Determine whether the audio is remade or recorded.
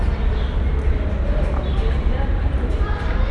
recorded